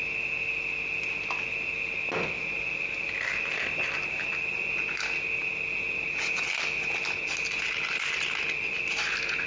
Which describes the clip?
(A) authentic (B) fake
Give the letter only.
A